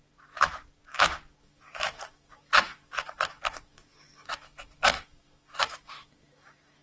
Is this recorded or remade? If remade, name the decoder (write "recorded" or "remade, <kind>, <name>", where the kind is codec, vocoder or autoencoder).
remade, autoencoder, DAC-VAE